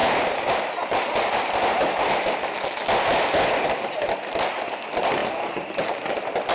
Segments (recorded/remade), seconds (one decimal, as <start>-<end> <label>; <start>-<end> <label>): 0.0-5.2 recorded; 5.2-5.8 remade; 5.8-6.5 recorded